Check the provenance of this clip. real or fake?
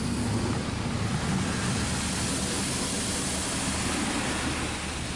real